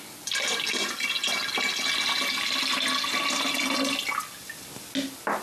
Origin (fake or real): real